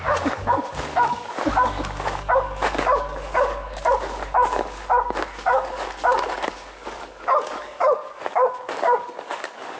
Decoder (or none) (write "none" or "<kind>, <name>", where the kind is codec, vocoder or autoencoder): codec, DAC